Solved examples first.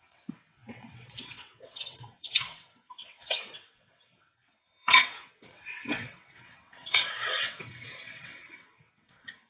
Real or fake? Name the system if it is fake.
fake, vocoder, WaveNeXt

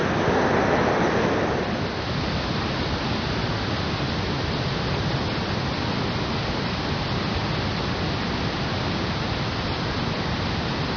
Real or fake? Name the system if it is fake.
real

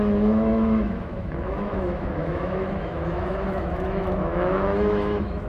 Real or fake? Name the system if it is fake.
fake, autoencoder, DAC-VAE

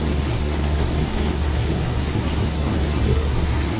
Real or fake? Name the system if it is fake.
fake, codec, SNAC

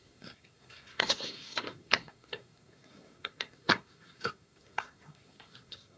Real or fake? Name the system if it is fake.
fake, codec, SNAC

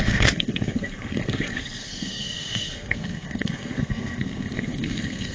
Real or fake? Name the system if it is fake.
fake, codec, SNAC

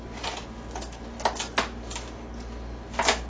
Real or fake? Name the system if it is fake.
real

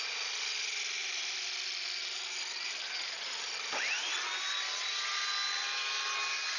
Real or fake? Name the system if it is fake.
real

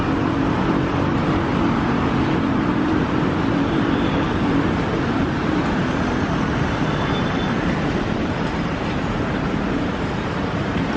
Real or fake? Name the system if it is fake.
fake, vocoder, BigVGAN v2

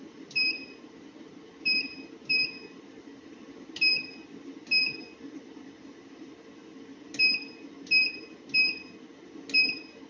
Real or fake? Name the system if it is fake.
real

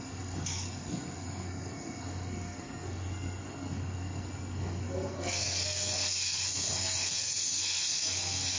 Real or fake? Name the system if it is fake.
fake, codec, SNAC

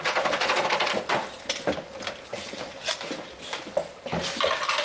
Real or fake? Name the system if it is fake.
real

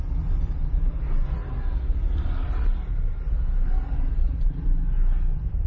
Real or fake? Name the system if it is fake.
real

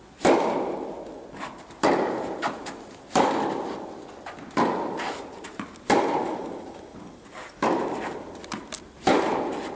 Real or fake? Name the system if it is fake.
real